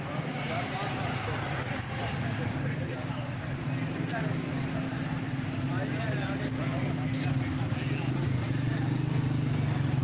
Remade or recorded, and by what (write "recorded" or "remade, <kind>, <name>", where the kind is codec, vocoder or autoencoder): recorded